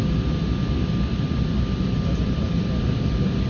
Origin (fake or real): real